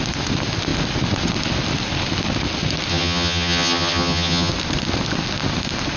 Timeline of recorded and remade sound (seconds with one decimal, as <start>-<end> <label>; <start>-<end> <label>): 0.0-2.9 recorded; 2.9-4.5 remade; 4.5-6.0 recorded

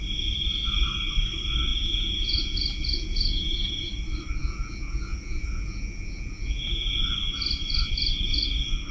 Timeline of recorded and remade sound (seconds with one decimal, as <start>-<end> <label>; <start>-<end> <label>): 0.0-1.7 recorded; 1.7-3.9 remade; 3.9-4.4 recorded; 4.4-6.9 remade; 6.9-8.9 recorded

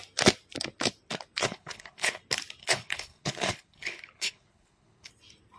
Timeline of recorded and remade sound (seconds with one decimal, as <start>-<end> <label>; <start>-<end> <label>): 0.0-1.4 recorded; 1.4-2.2 remade; 2.2-2.6 recorded; 2.6-5.1 remade; 5.1-5.6 recorded

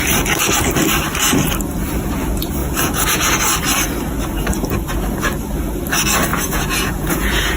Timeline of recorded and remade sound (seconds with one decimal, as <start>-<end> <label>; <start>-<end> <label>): 0.0-2.6 recorded; 2.6-3.3 remade; 3.3-6.3 recorded; 6.3-7.6 remade